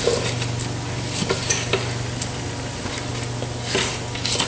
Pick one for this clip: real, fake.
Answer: real